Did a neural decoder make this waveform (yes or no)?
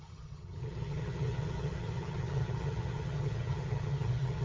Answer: yes